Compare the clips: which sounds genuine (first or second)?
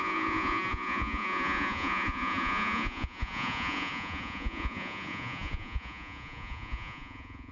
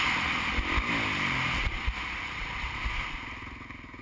second